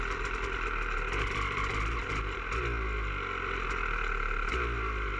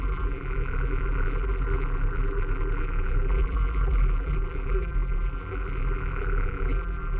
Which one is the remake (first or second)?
second